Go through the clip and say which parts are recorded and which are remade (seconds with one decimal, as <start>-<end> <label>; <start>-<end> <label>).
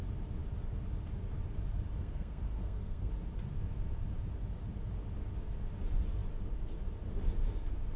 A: 0.0-2.0 recorded; 2.0-3.1 remade; 3.1-8.0 recorded